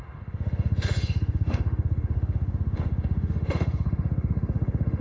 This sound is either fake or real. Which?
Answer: fake